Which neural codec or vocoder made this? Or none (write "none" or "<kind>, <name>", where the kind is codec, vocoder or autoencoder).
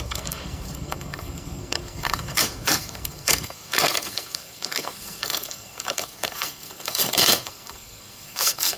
codec, SNAC